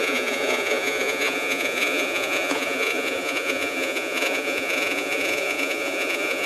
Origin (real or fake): fake